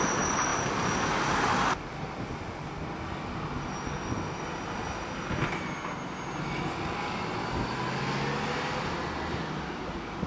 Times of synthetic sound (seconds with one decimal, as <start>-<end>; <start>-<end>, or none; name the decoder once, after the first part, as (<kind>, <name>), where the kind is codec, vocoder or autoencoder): none